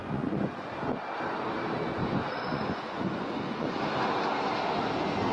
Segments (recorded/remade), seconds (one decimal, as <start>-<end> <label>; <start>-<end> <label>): 0.0-0.7 remade; 0.7-2.0 recorded; 2.0-3.8 remade; 3.8-5.3 recorded